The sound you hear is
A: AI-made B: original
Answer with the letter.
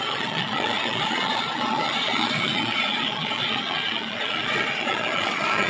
A